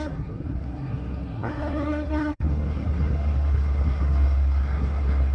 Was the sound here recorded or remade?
remade